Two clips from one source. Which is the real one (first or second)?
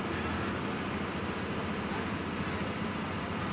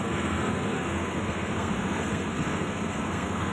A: first